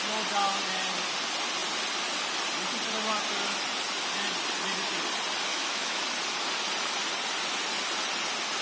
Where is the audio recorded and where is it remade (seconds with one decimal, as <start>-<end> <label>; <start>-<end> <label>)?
0.0-5.5 recorded; 5.5-6.0 remade; 6.0-8.6 recorded